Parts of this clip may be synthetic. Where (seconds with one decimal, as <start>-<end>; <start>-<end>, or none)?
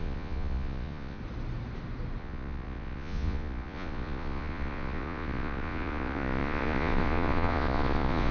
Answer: 0.0-1.2; 2.2-8.3